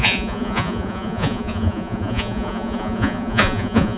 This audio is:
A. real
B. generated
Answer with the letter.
B